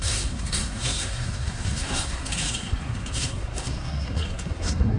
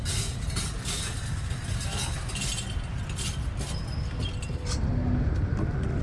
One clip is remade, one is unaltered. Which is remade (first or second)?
first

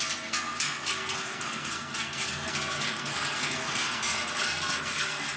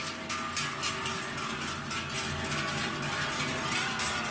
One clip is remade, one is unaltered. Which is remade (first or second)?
first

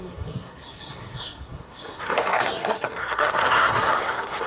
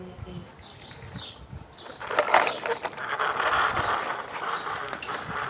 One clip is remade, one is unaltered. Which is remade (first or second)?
first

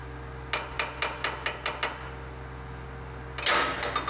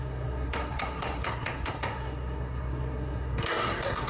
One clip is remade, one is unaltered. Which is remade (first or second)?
second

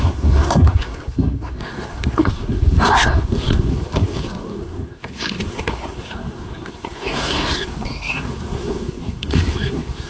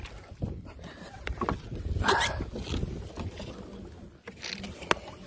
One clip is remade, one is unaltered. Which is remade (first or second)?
first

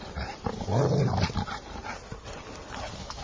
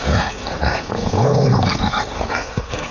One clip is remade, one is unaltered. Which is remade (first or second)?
second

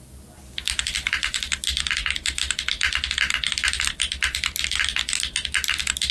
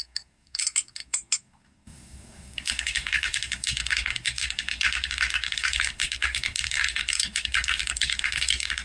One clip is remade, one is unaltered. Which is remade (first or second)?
second